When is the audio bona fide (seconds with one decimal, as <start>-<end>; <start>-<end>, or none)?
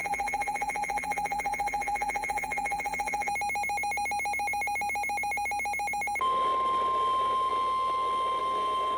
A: 3.3-9.0